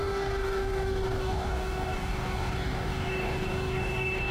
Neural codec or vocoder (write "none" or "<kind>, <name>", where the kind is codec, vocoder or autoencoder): codec, DAC